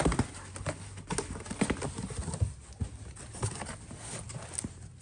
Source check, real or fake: real